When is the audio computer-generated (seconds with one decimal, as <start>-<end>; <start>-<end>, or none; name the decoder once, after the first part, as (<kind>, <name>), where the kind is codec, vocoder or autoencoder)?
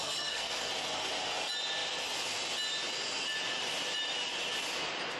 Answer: 0.0-0.7 (codec, SNAC)